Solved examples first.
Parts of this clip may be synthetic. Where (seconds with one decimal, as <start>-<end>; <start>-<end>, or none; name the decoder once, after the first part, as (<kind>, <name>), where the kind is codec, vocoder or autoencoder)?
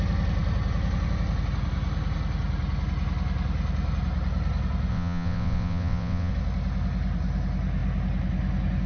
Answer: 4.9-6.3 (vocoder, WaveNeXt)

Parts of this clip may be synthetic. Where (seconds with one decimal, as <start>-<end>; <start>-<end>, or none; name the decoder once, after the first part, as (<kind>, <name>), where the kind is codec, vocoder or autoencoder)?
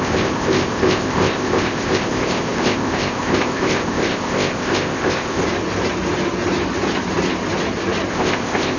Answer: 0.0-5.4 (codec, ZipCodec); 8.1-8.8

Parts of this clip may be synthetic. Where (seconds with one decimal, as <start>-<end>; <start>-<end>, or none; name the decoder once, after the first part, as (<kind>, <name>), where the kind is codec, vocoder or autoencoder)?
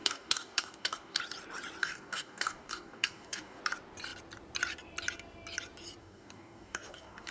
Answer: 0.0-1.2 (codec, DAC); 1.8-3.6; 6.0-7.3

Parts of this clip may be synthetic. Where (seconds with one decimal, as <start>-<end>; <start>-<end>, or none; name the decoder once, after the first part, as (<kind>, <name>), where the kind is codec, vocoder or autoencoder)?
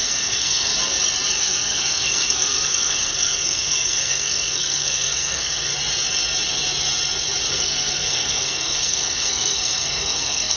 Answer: 0.0-0.7 (codec, SNAC); 1.3-5.7; 7.5-10.6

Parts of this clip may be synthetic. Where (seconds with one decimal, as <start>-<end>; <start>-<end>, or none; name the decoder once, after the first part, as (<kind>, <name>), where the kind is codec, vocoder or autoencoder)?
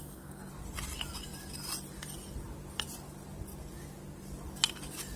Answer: 0.0-0.5 (codec, SNAC)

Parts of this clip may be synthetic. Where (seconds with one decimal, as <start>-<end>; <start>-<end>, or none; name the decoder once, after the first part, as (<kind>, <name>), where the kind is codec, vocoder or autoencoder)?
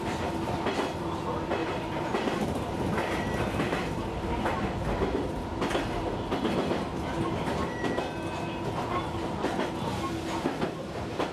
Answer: 1.6-2.8 (vocoder, BigVGAN v2)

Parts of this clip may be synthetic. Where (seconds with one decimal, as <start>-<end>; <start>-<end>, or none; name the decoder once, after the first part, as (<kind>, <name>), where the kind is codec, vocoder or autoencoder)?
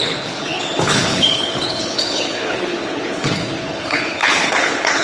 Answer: 0.0-5.0 (codec, HILCodec)